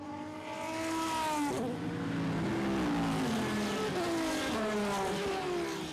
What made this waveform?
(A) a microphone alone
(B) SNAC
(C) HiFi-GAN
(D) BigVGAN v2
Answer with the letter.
A